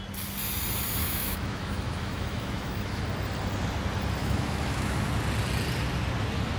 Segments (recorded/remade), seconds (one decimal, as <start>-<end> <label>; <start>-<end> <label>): 0.0-1.0 recorded; 1.0-3.0 remade; 3.0-4.2 recorded; 4.2-5.1 remade; 5.1-6.6 recorded